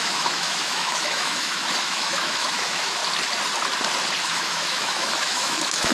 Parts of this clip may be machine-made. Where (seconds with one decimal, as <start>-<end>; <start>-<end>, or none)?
0.0-3.0; 4.2-5.9